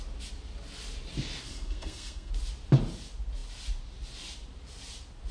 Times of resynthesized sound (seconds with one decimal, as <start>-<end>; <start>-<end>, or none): 1.5-2.3